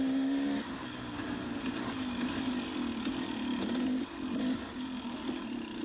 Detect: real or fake real